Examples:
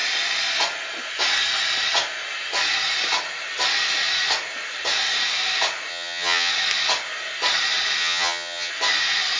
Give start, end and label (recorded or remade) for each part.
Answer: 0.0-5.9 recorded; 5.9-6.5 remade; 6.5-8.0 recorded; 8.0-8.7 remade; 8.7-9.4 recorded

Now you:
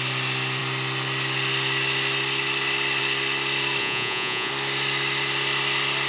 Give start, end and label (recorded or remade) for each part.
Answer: 0.0-3.8 recorded; 3.8-4.5 remade; 4.5-6.1 recorded